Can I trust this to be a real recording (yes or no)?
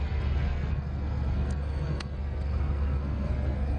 no